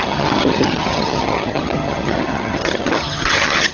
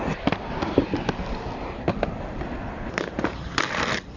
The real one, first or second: second